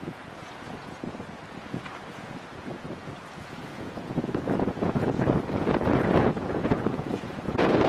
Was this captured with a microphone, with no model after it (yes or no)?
no